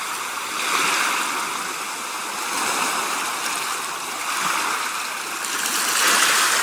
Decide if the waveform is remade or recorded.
recorded